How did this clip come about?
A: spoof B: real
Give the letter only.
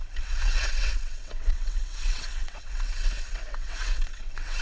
A